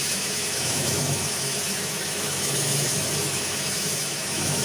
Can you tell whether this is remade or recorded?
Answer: remade